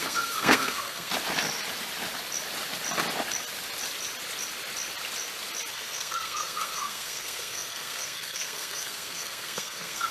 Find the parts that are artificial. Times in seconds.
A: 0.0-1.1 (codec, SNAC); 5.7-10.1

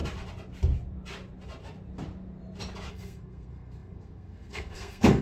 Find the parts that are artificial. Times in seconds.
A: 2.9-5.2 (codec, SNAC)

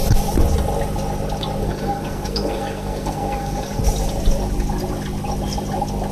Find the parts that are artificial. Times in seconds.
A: 1.6-3.8 (codec, SNAC)

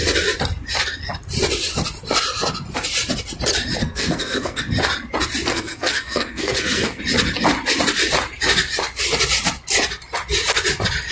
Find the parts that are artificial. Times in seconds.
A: 3.8-4.6 (codec, SNAC); 5.5-7.0

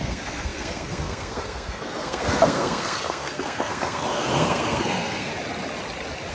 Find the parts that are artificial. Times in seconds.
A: 0.0-5.3 (codec, SNAC)